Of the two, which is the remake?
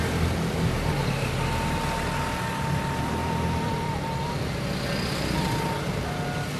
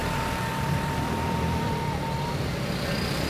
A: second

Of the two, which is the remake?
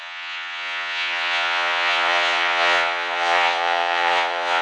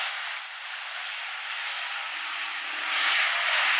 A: first